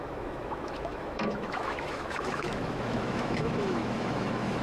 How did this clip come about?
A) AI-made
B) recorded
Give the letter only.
A